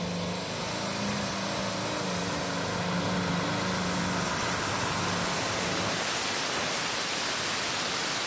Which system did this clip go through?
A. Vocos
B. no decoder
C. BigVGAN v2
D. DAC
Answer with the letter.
B